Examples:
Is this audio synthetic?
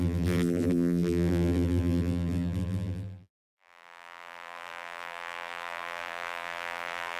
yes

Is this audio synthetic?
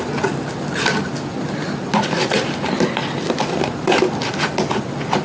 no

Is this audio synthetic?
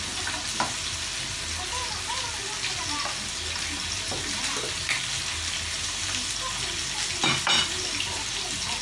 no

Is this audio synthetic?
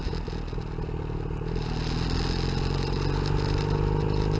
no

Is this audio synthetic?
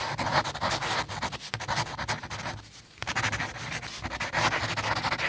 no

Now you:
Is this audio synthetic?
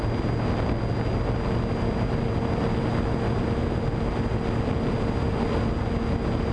no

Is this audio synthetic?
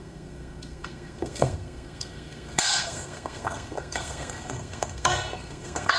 yes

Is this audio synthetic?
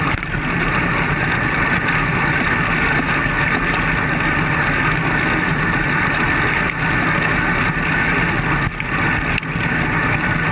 no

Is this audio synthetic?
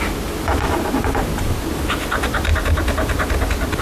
no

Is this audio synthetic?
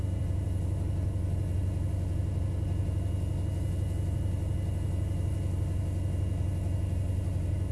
no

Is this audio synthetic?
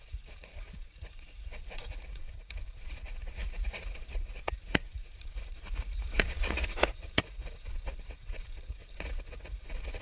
yes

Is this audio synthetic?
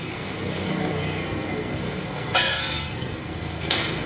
yes